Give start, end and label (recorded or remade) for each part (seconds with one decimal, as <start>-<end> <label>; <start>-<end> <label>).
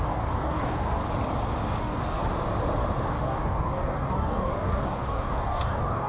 0.0-1.0 remade; 1.0-1.8 recorded; 1.8-2.2 remade; 2.2-3.1 recorded; 3.1-6.1 remade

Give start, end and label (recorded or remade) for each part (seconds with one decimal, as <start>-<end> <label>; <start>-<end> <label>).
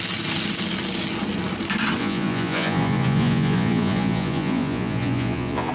0.0-2.0 recorded; 2.0-5.7 remade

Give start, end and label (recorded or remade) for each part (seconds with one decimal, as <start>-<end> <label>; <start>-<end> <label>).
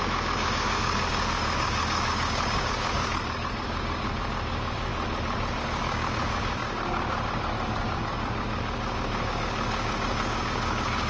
0.0-4.9 remade; 4.9-5.6 recorded; 5.6-11.1 remade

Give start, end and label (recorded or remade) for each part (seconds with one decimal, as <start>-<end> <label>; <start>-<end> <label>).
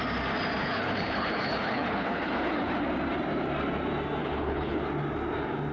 0.0-0.6 recorded; 0.6-2.8 remade; 2.8-4.2 recorded; 4.2-4.8 remade; 4.8-5.7 recorded